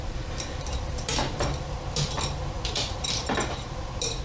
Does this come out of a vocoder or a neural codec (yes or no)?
yes